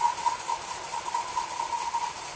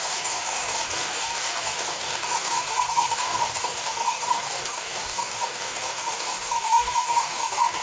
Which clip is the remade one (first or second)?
second